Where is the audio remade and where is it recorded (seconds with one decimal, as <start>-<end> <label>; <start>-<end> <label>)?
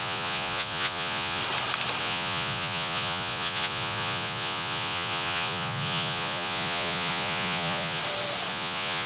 0.0-1.4 remade; 1.4-2.0 recorded; 2.0-8.0 remade; 8.0-8.5 recorded; 8.5-9.1 remade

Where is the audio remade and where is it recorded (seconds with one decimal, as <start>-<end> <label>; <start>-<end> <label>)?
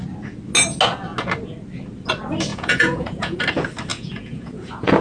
0.0-2.5 recorded; 2.5-3.4 remade; 3.4-3.9 recorded; 3.9-5.0 remade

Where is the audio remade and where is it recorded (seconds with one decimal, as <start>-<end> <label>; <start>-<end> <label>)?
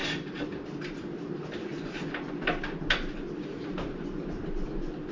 0.0-5.1 recorded